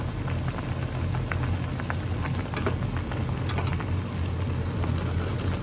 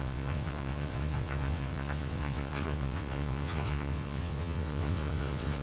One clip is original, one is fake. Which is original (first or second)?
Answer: first